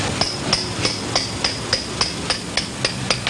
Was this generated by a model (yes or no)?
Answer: no